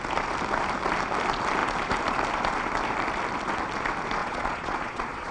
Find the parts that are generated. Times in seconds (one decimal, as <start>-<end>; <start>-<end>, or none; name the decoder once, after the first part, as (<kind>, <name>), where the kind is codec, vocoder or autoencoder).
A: 4.2-5.3 (vocoder, Vocos)